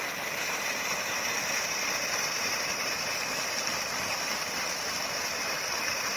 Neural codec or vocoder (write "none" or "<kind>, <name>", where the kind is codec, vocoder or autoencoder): vocoder, BigVGAN v2